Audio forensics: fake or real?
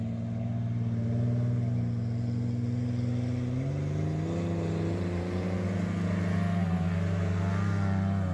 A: real